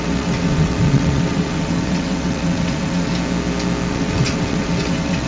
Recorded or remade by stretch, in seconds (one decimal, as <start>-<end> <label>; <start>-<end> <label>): 0.0-3.1 remade; 3.1-3.9 recorded; 3.9-5.3 remade